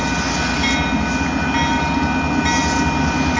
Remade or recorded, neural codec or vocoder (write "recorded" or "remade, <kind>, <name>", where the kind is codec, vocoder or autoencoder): recorded